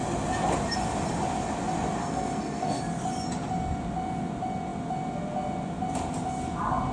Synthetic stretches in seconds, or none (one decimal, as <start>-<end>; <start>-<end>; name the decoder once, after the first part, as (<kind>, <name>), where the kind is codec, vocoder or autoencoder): 2.0-2.8 (codec, SNAC)